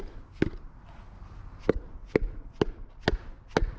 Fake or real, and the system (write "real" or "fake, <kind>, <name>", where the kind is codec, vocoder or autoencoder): real